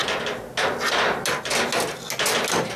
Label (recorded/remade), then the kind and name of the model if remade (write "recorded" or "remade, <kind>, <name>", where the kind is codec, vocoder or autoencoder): recorded